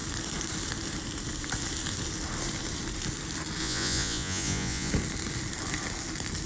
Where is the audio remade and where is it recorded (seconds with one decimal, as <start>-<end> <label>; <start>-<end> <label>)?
0.0-3.6 recorded; 3.6-4.9 remade; 4.9-6.5 recorded